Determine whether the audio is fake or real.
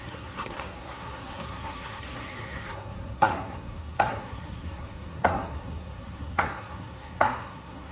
fake